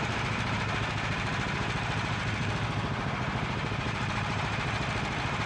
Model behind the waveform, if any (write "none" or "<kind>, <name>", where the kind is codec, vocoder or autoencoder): vocoder, BigVGAN v2